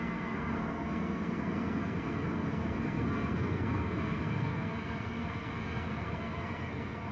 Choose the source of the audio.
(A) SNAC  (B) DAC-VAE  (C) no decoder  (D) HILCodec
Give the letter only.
A